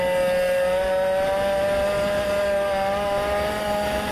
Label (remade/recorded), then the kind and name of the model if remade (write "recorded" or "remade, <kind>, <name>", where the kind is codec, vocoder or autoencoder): recorded